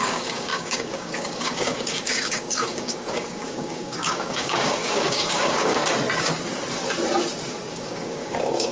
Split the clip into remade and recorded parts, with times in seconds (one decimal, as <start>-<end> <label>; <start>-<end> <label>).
0.0-5.8 remade; 5.8-7.7 recorded; 7.7-8.7 remade